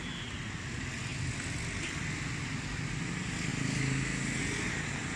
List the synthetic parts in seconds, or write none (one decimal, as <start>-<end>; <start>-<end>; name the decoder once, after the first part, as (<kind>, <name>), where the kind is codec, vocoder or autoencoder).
none